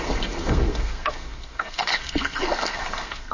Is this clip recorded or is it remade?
remade